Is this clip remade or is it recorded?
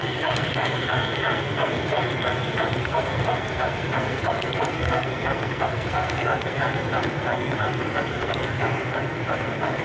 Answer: remade